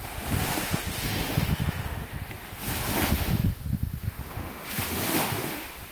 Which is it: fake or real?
fake